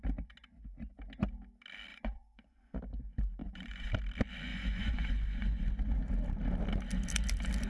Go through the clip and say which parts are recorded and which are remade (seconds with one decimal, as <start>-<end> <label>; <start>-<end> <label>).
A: 0.0-1.9 recorded; 1.9-2.8 remade; 2.8-3.4 recorded; 3.4-3.9 remade; 3.9-4.5 recorded; 4.5-6.1 remade; 6.1-7.7 recorded